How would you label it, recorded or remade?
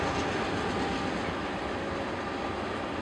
recorded